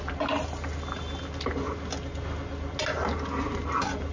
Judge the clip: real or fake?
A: real